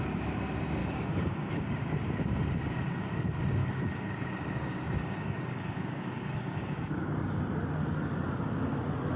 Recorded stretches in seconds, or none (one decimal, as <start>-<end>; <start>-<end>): 0.0-0.8; 1.5-3.6; 7.4-9.2